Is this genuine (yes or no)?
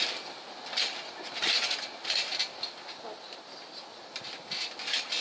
yes